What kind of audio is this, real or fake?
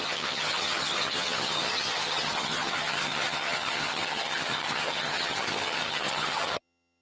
fake